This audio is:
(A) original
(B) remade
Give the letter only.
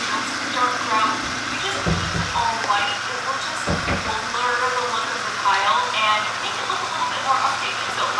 A